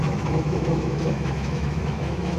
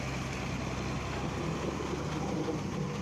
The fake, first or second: first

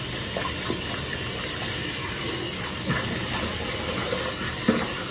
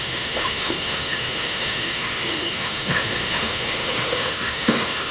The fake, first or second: second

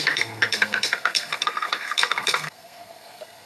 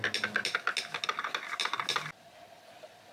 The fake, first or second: first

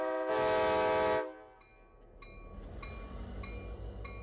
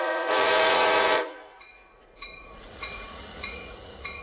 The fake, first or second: second